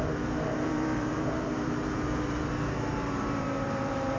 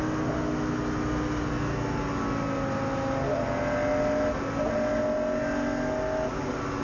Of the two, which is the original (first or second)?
second